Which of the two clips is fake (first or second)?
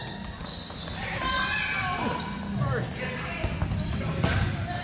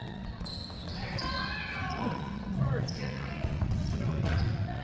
second